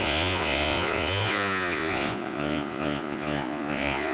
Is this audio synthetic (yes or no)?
yes